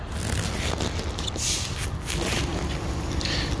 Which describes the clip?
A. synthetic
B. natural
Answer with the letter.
B